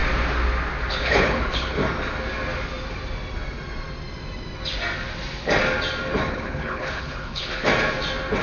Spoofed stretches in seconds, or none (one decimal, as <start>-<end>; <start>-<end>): 0.9-1.8; 6.3-7.7